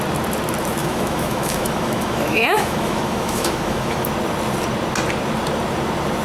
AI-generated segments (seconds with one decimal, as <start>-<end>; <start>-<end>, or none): 0.8-4.1